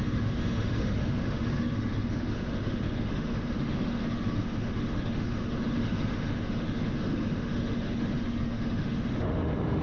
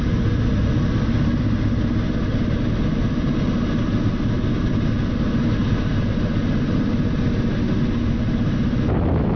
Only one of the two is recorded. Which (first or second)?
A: second